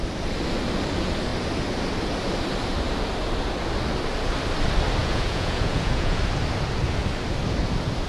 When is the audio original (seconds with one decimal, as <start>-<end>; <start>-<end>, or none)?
0.0-5.0; 6.2-8.1